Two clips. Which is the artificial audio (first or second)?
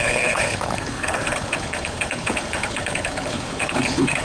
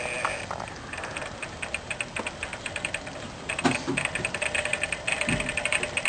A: first